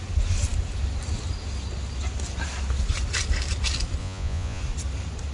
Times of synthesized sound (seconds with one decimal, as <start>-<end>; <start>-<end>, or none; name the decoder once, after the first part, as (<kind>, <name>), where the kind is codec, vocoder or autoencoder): 4.0-4.6 (vocoder, Vocos)